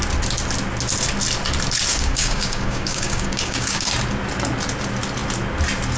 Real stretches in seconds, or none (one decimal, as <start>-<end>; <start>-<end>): 0.0-1.9; 3.9-6.0